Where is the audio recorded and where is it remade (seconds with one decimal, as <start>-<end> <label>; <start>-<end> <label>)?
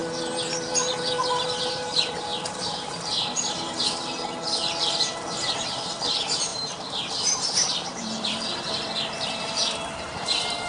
0.0-1.7 recorded; 1.7-10.7 remade